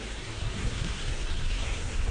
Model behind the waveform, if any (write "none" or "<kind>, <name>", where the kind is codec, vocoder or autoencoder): codec, SNAC